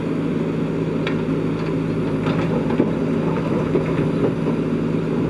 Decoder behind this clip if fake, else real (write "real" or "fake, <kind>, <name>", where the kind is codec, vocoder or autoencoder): real